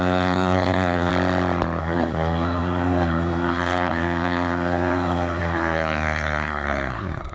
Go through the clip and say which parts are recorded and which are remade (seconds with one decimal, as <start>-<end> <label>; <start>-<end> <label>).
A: 0.0-1.1 remade; 1.1-1.8 recorded; 1.8-7.3 remade